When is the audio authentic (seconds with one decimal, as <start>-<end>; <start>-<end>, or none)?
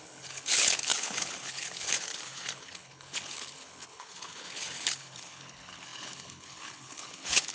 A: none